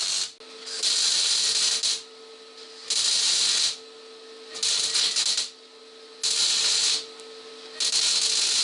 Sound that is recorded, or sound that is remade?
recorded